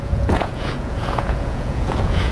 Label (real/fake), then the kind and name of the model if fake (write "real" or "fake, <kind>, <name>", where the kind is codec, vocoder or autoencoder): fake, vocoder, Vocos